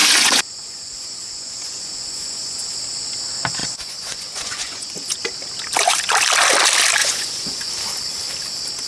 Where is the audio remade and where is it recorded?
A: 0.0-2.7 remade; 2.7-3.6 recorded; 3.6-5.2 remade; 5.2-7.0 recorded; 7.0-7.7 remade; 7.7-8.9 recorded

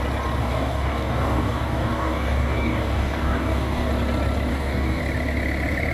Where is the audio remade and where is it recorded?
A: 0.0-0.4 recorded; 0.4-3.9 remade; 3.9-4.5 recorded; 4.5-5.0 remade; 5.0-5.9 recorded

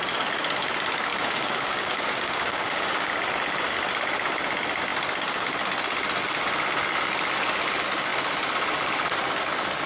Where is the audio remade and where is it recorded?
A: 0.0-1.1 recorded; 1.1-3.1 remade; 3.1-9.9 recorded

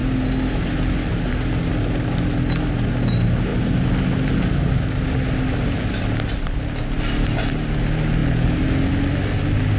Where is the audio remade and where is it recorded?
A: 0.0-9.8 recorded

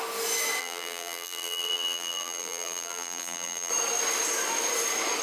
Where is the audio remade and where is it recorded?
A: 0.0-0.6 recorded; 0.6-3.7 remade; 3.7-5.2 recorded

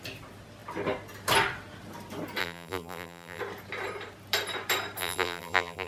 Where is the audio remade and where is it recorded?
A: 0.0-2.4 recorded; 2.4-3.4 remade; 3.4-5.0 recorded; 5.0-5.9 remade